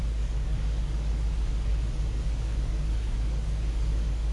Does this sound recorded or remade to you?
remade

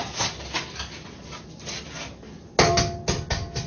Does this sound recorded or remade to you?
recorded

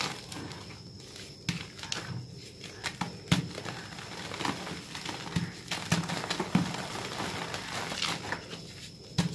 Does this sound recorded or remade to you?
recorded